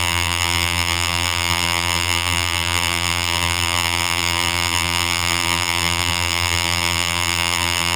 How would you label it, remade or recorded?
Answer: remade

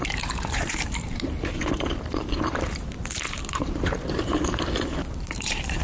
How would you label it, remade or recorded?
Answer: remade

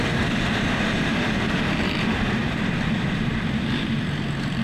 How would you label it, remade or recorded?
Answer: remade